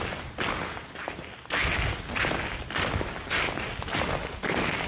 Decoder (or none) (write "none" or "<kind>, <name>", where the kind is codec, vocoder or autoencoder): none